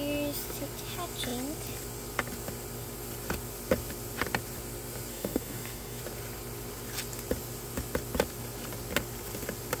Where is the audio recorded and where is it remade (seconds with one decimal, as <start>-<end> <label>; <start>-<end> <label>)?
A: 0.0-5.1 recorded; 5.1-6.0 remade; 6.0-9.8 recorded